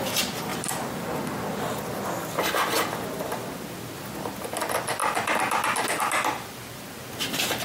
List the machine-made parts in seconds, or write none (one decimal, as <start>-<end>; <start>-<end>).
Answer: none